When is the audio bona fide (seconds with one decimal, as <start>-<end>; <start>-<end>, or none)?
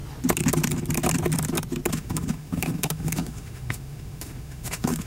0.0-1.9